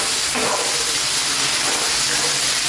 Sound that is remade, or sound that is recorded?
recorded